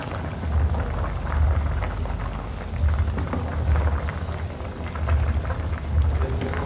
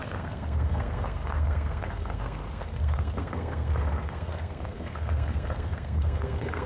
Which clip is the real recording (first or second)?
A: first